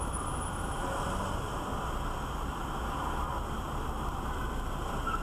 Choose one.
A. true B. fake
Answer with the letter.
A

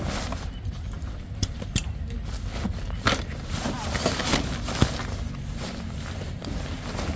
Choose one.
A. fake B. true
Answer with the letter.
B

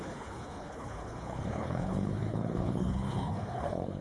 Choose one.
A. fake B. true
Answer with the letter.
A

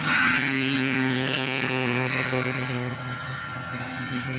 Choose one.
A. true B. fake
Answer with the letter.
B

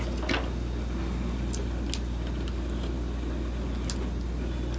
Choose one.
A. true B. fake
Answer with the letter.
A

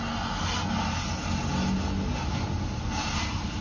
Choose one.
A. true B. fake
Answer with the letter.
A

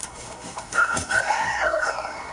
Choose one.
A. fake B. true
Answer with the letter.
A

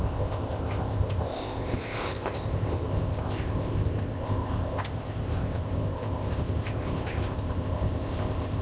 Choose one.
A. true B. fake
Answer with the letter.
B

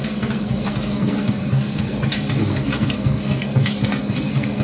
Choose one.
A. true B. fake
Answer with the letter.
B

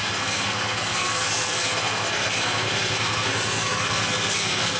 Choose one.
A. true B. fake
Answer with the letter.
B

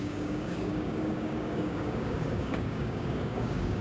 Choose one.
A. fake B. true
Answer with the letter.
A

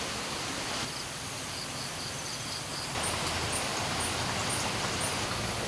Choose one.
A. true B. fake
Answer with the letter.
A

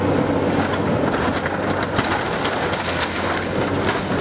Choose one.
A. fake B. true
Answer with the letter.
B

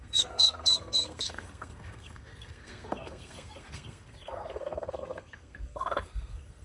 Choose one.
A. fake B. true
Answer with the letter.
A